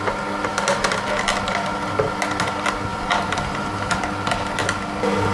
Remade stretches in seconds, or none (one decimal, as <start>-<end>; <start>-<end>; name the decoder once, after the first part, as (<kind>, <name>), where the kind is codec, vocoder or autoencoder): 2.9-4.0 (vocoder, BigVGAN v2)